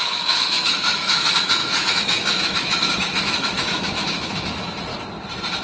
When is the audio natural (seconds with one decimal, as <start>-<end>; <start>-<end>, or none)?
4.9-5.6